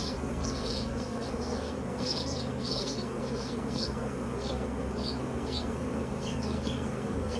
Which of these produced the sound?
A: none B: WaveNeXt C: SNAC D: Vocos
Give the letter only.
C